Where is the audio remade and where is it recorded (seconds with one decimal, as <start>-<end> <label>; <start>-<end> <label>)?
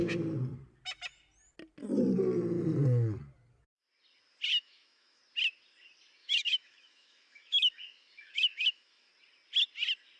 0.0-4.5 recorded; 4.5-5.2 remade; 5.2-6.2 recorded; 6.2-9.1 remade; 9.1-10.2 recorded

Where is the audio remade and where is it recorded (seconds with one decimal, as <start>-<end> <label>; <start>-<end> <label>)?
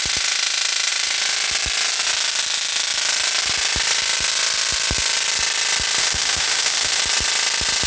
0.0-6.0 recorded; 6.0-7.0 remade; 7.0-7.9 recorded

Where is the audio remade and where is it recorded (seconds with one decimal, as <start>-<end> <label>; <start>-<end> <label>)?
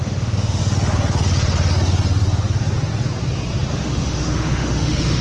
0.0-0.6 remade; 0.6-3.7 recorded; 3.7-5.2 remade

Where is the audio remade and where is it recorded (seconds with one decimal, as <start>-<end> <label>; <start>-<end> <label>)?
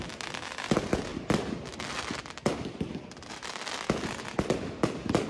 0.0-5.3 recorded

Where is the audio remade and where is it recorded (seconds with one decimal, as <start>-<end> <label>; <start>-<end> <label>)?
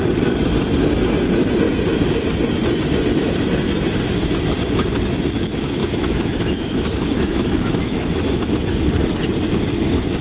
0.0-5.8 recorded; 5.8-8.5 remade; 8.5-10.2 recorded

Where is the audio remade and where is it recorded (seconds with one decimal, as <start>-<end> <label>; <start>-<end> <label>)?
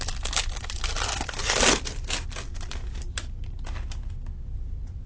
0.0-5.1 recorded